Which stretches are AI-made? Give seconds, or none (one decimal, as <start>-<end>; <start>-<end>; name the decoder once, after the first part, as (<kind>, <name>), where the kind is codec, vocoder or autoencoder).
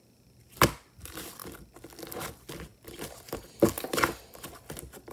none